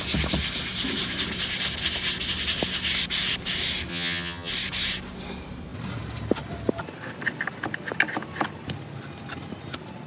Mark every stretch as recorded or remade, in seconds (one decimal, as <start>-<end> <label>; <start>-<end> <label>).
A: 0.0-3.9 recorded; 3.9-4.5 remade; 4.5-10.1 recorded